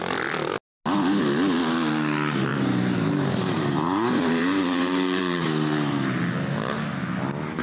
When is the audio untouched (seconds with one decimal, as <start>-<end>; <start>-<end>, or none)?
0.0-2.5; 6.2-7.6